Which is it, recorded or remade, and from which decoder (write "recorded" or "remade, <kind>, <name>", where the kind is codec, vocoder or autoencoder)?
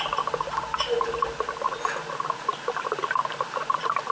recorded